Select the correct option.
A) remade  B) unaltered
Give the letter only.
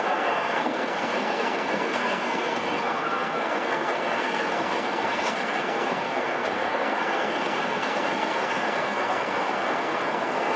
A